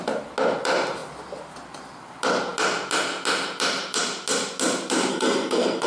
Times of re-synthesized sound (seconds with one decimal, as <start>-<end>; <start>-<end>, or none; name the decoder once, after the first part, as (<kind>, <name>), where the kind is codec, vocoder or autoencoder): 5.1-5.9 (codec, SNAC)